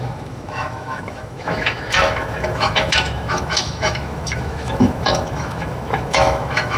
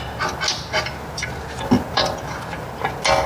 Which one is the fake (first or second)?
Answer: first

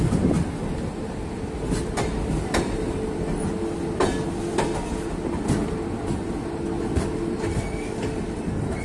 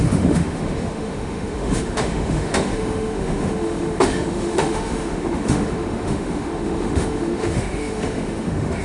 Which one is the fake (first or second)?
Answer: second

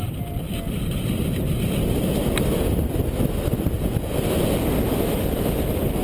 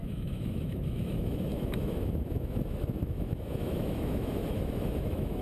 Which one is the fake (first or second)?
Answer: second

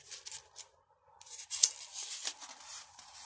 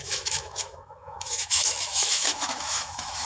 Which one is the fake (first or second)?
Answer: second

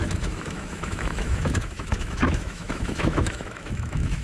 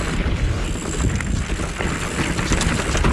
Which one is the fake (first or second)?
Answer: first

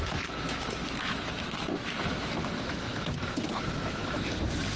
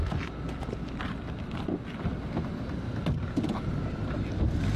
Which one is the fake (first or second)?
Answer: first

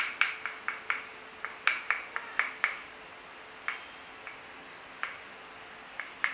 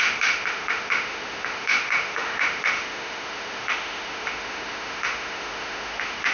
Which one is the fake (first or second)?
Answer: second